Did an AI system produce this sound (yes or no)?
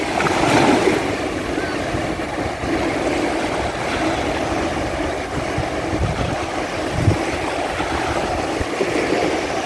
no